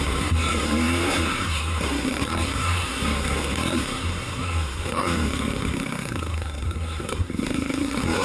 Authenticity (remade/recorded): remade